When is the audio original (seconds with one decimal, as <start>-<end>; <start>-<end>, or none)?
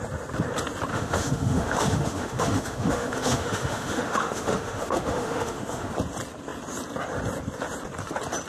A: 0.0-0.9; 5.9-8.5